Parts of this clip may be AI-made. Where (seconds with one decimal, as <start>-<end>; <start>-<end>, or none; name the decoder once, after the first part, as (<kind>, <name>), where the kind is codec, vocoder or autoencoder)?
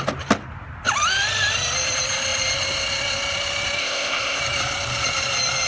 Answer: 3.8-4.4 (codec, ZipCodec)